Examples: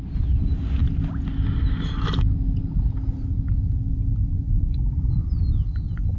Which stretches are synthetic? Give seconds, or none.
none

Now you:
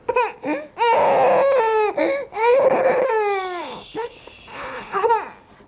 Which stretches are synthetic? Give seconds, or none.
2.3-3.1 (codec, HILCodec); 3.6-4.1; 4.5-5.1

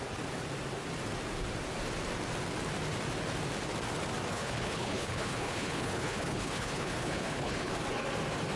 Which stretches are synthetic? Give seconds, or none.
4.3-7.7 (codec, HILCodec)

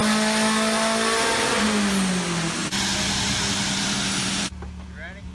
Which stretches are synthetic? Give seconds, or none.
none

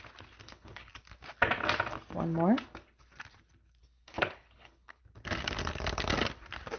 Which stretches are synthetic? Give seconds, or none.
0.4-0.9 (codec, HILCodec); 3.8-5.0

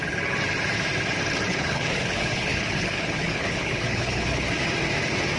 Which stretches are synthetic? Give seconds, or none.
1.5-4.5 (codec, HILCodec)